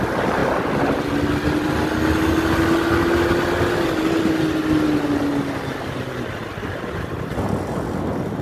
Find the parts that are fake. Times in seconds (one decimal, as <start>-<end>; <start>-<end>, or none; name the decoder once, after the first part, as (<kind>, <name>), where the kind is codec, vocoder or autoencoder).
none